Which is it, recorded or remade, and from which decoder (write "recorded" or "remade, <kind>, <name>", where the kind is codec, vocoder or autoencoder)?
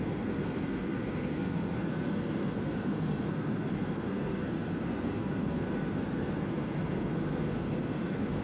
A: remade, codec, SNAC